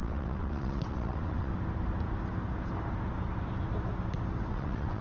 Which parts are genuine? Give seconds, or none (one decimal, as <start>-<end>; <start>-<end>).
1.5-4.5